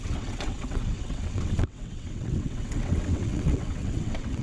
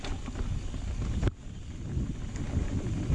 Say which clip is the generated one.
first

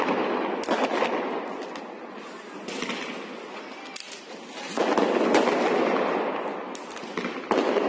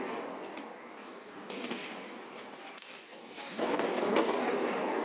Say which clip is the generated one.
second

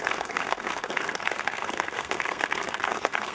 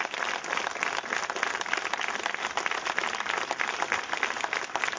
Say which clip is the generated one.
first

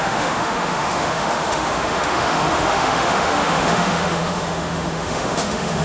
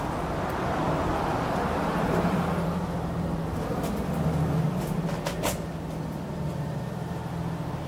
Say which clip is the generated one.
first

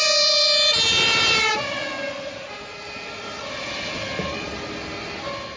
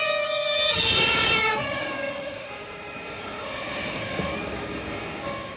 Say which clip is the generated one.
second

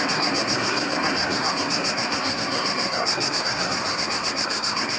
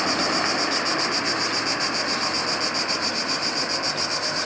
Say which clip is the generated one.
first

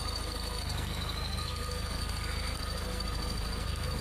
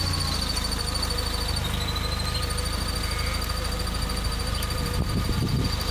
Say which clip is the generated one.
first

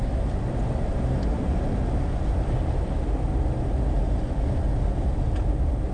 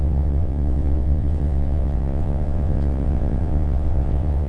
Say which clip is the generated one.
second